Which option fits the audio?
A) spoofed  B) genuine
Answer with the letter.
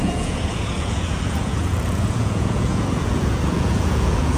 A